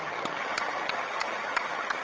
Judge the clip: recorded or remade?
remade